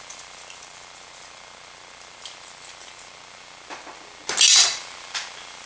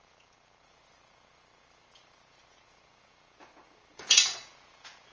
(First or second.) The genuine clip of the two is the first